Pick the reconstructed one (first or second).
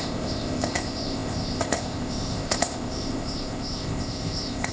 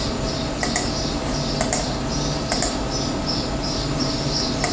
first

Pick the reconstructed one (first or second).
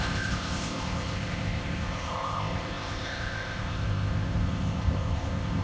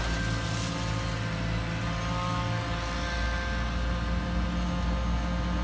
first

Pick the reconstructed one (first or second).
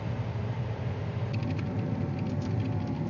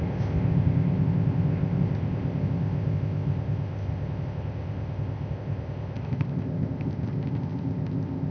second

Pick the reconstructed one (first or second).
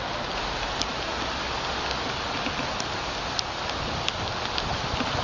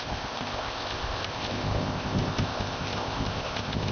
second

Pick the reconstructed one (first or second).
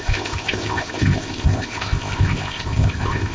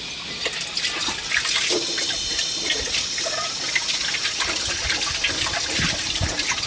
first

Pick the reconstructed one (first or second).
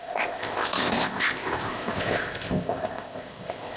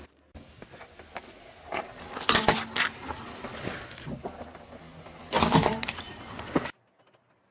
first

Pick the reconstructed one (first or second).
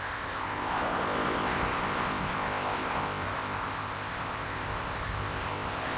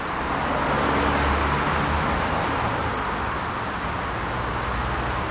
first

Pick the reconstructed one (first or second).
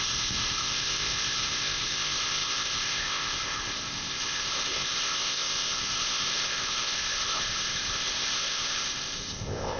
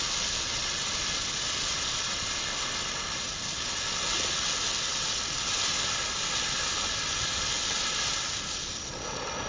first